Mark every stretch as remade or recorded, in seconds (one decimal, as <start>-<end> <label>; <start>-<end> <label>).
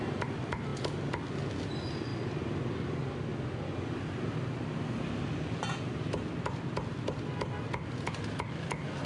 0.0-9.1 recorded